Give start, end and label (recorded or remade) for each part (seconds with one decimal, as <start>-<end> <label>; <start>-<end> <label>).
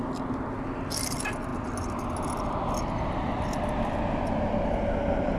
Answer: 0.0-5.4 recorded